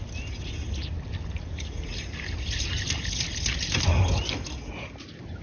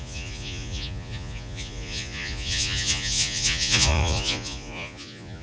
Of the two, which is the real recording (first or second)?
first